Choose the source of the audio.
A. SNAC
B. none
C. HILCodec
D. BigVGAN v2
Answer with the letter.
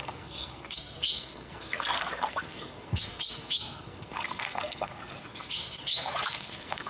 A